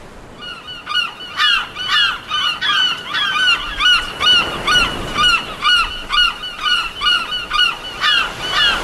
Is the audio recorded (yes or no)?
yes